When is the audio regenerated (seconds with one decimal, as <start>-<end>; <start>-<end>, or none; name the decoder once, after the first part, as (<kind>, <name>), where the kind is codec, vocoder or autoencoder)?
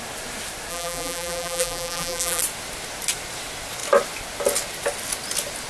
0.7-2.4 (vocoder, BigVGAN v2)